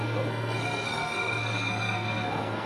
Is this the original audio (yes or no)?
no